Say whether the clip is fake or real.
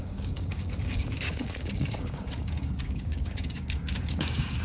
fake